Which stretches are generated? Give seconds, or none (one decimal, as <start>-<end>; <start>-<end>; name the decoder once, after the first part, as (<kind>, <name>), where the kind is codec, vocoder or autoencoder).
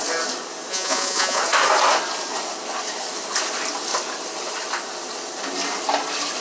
0.7-1.4 (vocoder, Vocos)